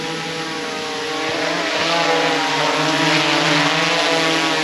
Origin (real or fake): real